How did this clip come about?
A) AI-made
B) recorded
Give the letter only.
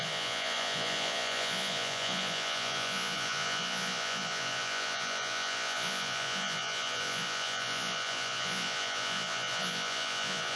A